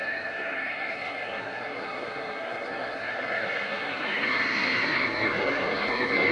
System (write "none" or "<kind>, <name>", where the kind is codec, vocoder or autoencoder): codec, SNAC